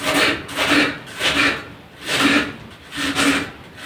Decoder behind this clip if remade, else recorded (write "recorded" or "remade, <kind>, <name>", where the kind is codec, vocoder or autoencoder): recorded